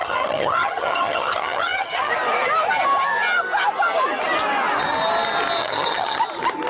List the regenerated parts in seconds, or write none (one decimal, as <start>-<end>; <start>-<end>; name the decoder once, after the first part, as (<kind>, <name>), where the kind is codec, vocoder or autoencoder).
0.0-2.1 (vocoder, HiFi-GAN); 5.6-6.2